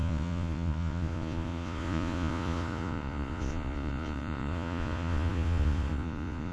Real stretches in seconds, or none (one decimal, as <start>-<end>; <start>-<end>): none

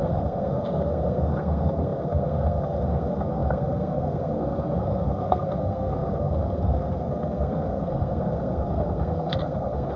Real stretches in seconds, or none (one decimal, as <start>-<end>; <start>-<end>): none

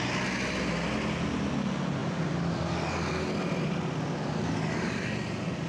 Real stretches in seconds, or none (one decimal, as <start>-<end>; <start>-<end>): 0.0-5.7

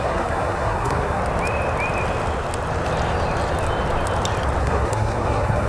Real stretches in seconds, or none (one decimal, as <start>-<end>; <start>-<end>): 1.2-4.6

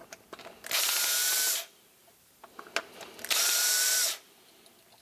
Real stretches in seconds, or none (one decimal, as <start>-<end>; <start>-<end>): 0.0-5.0

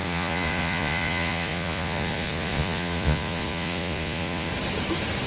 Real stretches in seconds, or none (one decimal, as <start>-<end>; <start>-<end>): 4.5-5.3